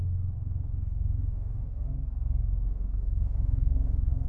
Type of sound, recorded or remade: remade